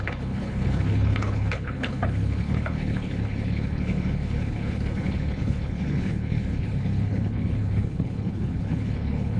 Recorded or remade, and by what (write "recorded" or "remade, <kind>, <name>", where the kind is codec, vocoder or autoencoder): remade, codec, HILCodec